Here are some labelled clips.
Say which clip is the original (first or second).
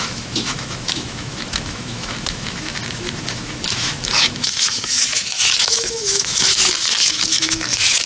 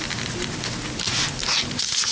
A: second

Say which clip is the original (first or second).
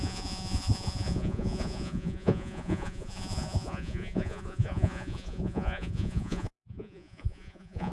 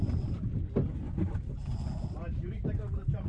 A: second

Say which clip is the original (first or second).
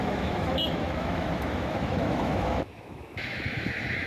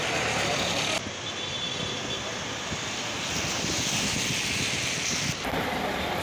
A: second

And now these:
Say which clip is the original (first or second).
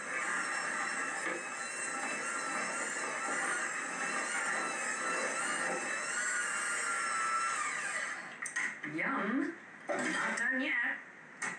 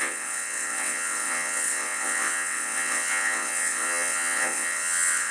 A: first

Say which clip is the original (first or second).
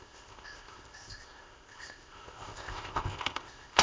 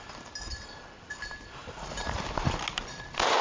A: second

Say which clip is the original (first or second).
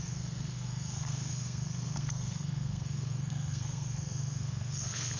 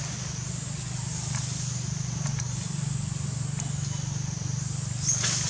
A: second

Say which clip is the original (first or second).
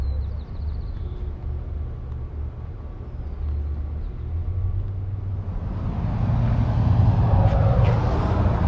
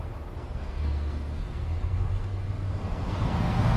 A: first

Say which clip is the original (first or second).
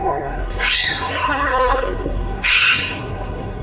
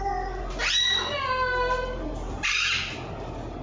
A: second